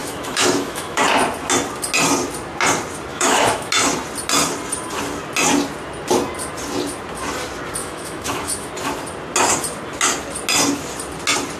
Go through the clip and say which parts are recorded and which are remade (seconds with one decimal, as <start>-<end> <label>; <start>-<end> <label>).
0.0-1.0 remade; 1.0-3.1 recorded; 3.1-3.7 remade; 3.7-7.8 recorded; 7.8-8.7 remade; 8.7-11.6 recorded